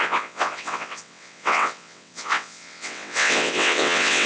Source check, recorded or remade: remade